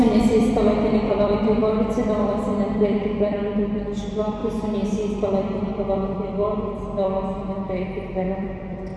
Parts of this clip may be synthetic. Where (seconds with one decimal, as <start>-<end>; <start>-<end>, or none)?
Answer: 0.0-0.4; 1.1-4.4; 5.1-9.0